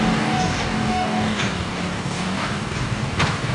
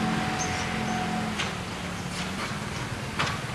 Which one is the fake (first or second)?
first